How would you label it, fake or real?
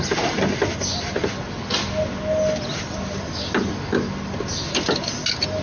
real